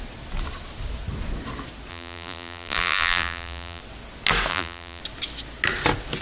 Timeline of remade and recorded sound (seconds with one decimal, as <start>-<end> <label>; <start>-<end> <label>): 0.0-1.9 recorded; 1.9-3.8 remade; 3.8-4.5 recorded; 4.5-5.0 remade; 5.0-6.2 recorded